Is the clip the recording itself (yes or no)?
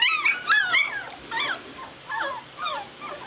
yes